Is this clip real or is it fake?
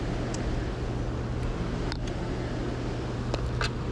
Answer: real